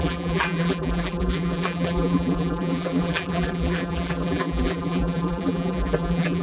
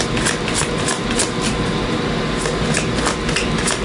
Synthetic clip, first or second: first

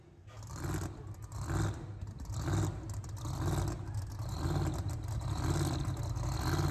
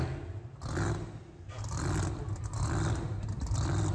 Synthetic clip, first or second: second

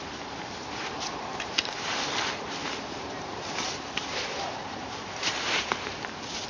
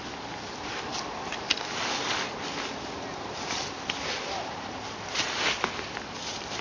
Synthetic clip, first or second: first